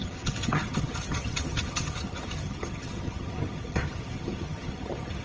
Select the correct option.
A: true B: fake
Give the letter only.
B